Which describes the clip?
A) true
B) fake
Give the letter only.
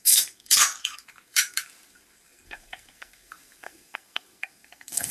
B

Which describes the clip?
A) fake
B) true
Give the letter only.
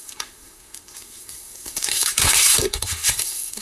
A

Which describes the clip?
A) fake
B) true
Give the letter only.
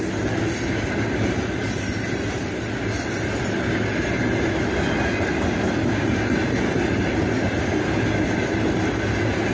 B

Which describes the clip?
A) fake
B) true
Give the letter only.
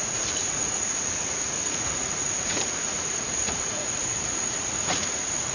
A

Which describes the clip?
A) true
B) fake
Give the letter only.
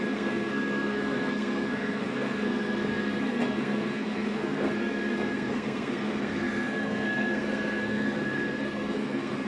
B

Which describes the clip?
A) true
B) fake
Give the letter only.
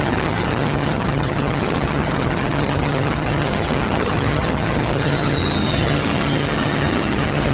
B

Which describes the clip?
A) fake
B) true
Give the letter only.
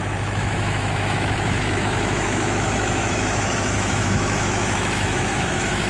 A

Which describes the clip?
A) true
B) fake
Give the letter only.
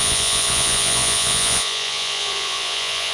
B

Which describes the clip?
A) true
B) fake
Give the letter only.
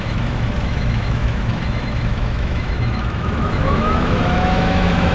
B